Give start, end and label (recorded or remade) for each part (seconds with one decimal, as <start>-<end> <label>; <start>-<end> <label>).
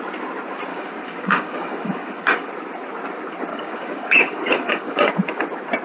0.0-0.7 recorded; 0.7-2.5 remade; 2.5-3.5 recorded; 3.5-5.1 remade; 5.1-5.8 recorded